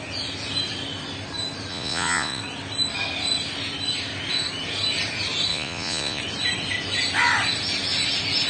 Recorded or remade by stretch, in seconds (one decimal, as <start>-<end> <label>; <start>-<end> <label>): 0.0-1.7 recorded; 1.7-2.4 remade; 2.4-5.5 recorded; 5.5-6.2 remade; 6.2-8.5 recorded